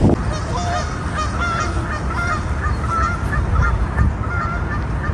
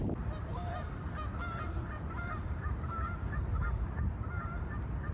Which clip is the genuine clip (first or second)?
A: first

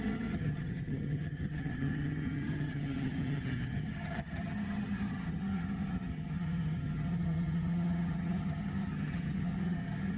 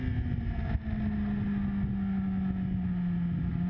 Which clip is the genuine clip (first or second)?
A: second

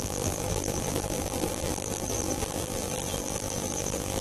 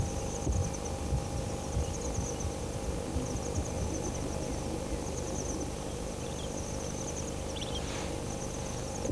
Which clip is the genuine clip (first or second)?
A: second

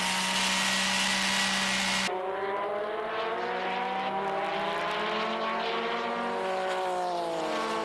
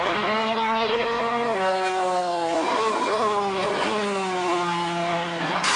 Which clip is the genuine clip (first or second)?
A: first